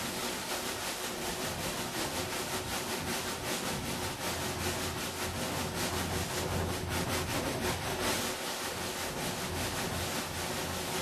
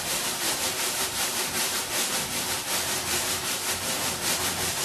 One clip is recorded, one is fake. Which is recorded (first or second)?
first